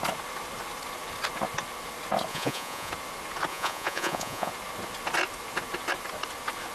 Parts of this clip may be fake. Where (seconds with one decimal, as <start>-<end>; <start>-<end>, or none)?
2.3-2.9; 3.5-4.5